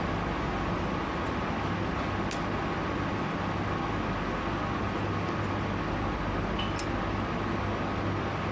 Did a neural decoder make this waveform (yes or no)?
no